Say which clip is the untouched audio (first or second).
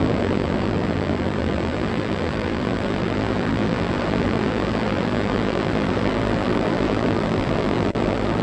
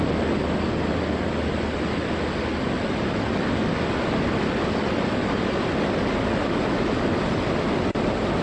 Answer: second